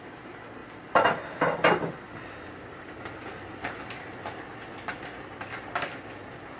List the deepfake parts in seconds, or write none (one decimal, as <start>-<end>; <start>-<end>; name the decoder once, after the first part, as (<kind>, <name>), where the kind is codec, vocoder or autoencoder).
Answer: none